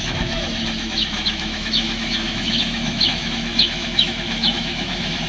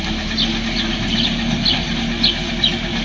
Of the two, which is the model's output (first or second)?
first